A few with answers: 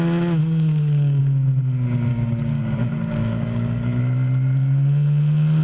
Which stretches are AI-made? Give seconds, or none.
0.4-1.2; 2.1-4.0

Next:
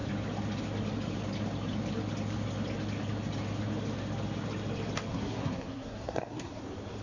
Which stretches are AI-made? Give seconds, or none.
5.1-6.6

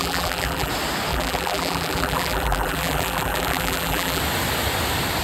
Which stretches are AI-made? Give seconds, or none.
0.0-0.7; 1.1-4.2

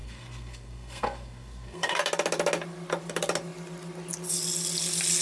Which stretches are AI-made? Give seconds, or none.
0.0-2.0

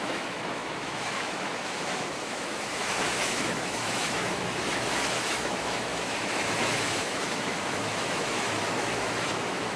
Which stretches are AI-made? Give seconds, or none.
0.0-9.8

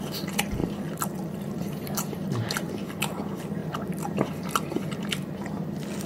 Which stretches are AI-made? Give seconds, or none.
none

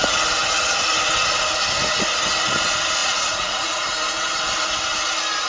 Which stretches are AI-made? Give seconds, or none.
3.0-3.9

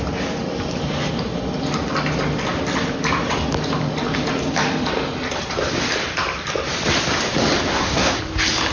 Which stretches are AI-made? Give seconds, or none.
7.7-8.2